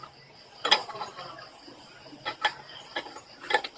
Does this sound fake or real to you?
real